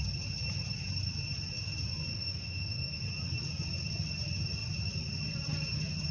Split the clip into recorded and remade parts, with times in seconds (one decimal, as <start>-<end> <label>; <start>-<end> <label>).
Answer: 0.0-2.1 recorded; 2.1-3.0 remade; 3.0-6.1 recorded